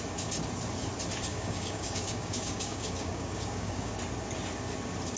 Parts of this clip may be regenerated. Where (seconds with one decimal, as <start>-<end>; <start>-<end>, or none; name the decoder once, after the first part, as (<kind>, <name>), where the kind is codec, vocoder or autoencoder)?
1.3-3.9 (codec, DAC)